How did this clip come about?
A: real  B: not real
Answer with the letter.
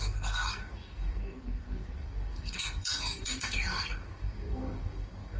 B